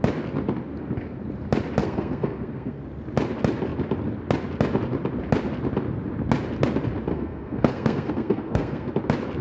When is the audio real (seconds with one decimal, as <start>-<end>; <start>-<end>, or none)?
0.0-1.8; 2.8-7.1; 8.9-9.4